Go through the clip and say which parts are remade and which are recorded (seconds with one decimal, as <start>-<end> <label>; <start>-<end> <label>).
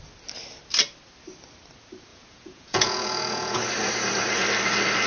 0.0-2.1 recorded; 2.1-3.6 remade; 3.6-5.1 recorded